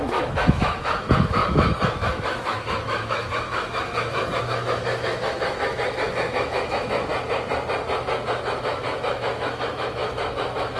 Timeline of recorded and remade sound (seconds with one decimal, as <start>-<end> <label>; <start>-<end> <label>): 0.0-7.1 remade; 7.1-8.3 recorded; 8.3-10.8 remade